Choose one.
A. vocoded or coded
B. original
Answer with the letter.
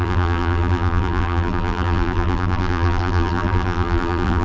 A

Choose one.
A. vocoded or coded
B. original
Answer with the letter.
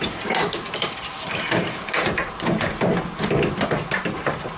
A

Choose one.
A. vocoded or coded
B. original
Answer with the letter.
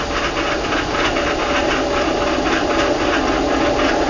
B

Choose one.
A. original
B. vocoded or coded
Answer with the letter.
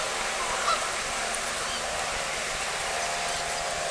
B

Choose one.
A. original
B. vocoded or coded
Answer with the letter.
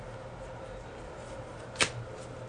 A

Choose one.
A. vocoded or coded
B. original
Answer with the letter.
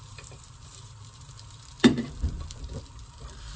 A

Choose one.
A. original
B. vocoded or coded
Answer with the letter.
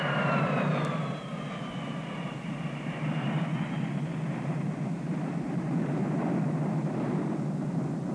A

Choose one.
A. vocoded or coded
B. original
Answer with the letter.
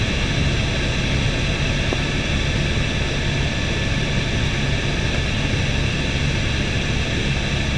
B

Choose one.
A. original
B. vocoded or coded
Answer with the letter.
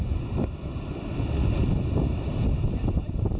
A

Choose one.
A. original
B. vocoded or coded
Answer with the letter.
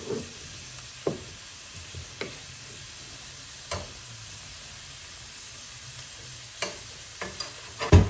A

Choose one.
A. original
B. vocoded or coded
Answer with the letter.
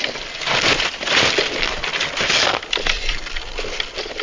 A